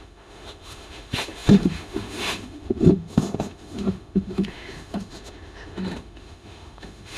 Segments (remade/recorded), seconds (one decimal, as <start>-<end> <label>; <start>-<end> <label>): 0.0-7.2 remade